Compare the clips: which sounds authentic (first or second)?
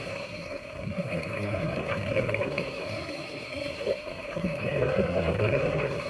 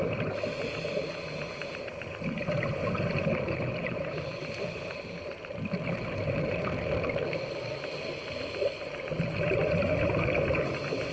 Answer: second